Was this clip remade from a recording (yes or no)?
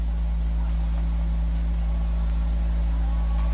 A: no